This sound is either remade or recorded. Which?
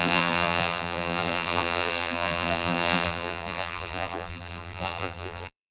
remade